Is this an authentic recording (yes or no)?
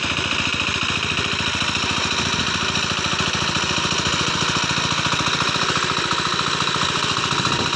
yes